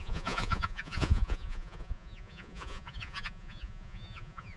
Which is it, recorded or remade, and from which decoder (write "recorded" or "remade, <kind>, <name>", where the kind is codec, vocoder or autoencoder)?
remade, vocoder, Vocos